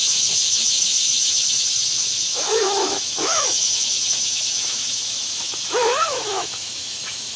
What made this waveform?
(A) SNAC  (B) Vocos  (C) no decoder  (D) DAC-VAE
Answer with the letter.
D